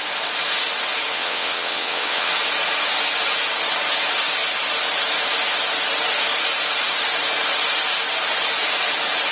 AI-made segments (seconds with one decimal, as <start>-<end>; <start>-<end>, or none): 1.1-2.3